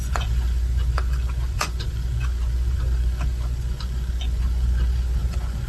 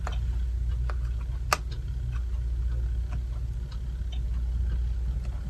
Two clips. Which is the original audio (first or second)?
second